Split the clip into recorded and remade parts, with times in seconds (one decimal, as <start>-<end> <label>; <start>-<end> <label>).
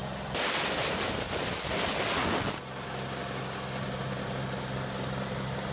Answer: 0.0-5.7 recorded